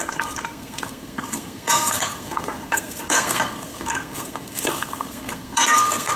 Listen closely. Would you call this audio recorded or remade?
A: remade